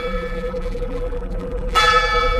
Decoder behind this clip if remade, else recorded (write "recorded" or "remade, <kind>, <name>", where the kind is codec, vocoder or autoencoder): remade, vocoder, BigVGAN v2